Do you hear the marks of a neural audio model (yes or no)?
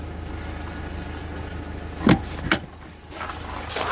no